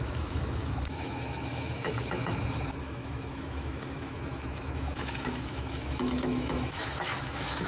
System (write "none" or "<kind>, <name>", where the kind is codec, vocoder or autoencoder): autoencoder, DAC-VAE